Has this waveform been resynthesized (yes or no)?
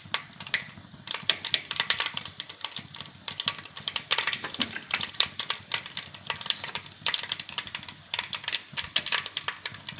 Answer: yes